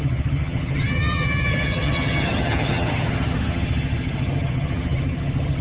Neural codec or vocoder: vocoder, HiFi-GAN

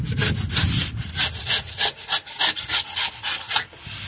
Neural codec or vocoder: none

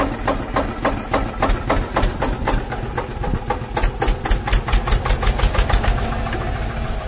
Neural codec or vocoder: none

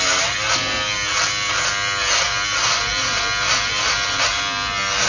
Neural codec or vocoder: none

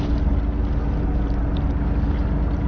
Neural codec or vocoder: none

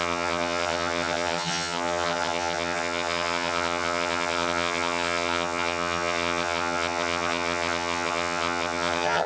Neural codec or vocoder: vocoder, HiFi-GAN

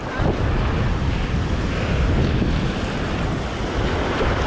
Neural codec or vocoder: none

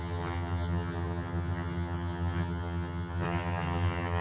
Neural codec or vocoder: vocoder, HiFi-GAN